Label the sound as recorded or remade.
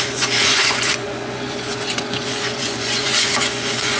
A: remade